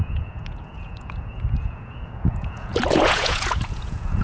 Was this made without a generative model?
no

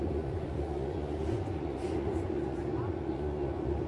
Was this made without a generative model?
no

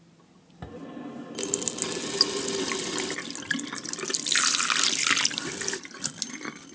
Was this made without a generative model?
yes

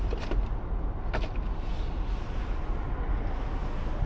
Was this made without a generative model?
yes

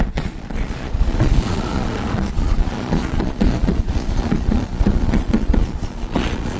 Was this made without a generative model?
no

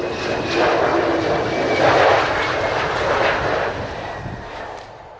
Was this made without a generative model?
yes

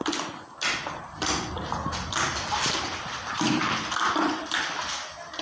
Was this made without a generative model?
yes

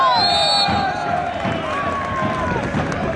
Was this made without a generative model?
yes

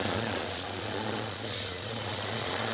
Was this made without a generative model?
no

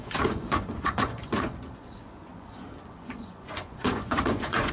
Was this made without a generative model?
no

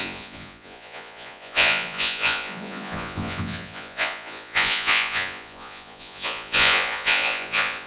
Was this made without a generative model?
no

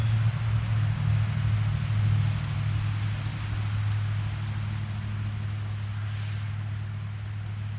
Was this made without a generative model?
yes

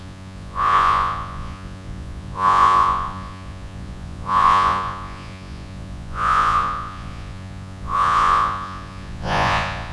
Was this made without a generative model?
no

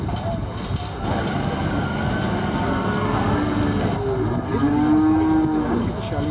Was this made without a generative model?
yes